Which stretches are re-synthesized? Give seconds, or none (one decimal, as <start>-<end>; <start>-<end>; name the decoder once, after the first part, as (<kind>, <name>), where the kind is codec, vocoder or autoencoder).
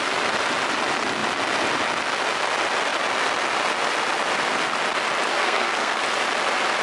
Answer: 5.3-6.0 (codec, SNAC)